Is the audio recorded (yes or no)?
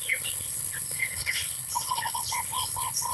no